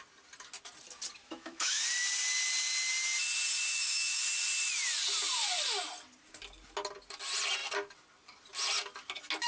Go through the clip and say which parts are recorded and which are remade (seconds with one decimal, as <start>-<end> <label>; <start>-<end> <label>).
0.0-1.2 recorded; 1.2-1.8 remade; 1.8-3.7 recorded; 3.7-4.2 remade; 4.2-9.5 recorded